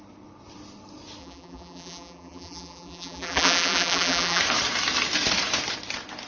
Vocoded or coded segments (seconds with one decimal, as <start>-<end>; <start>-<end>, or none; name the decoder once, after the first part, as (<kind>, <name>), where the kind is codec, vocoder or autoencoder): 1.2-4.4 (vocoder, BigVGAN v2)